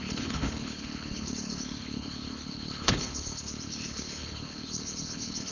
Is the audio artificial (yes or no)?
yes